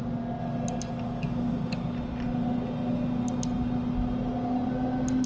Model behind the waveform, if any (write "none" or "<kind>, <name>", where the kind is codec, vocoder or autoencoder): none